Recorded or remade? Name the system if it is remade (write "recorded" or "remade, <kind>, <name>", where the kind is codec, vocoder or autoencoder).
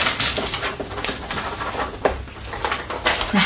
recorded